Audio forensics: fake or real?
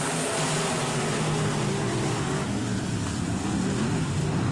real